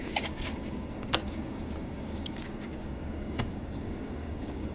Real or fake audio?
fake